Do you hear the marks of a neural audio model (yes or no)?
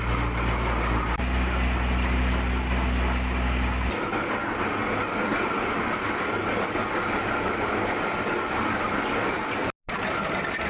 no